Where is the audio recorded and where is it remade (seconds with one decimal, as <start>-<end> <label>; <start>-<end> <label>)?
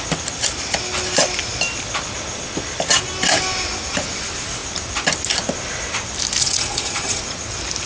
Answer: 0.0-6.4 recorded; 6.4-7.2 remade; 7.2-7.9 recorded